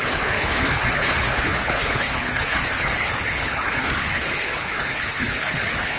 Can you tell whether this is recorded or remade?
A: remade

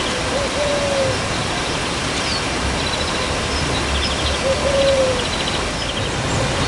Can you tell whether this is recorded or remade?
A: recorded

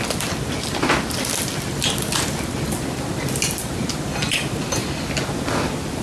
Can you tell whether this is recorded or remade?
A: recorded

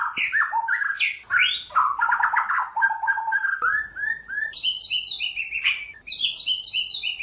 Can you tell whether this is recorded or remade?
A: recorded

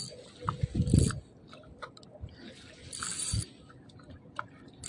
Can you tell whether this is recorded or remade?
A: recorded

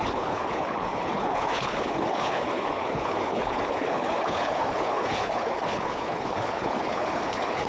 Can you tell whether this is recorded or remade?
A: remade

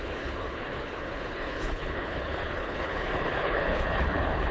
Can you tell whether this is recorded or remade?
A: remade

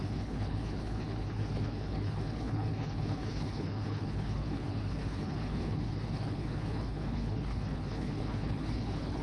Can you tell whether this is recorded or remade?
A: remade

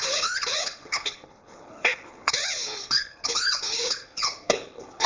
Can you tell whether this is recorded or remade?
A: remade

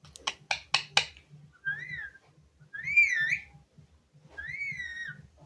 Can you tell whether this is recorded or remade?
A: recorded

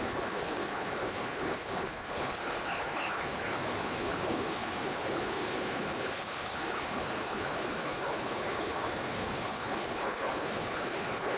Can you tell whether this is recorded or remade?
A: remade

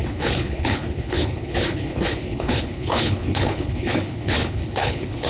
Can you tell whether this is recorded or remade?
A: remade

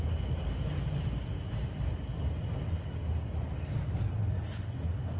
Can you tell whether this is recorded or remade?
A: recorded